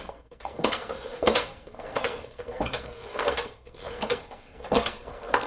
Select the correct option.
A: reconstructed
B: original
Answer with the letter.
A